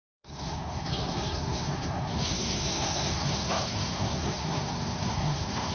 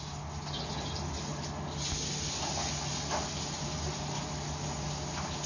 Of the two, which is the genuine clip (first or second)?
second